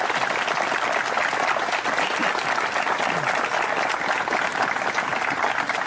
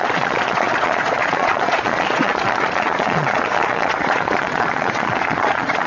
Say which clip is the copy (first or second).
second